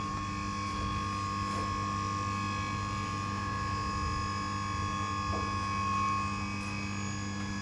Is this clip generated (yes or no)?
no